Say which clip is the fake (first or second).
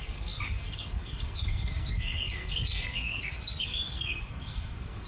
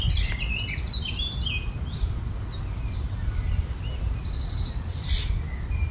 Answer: first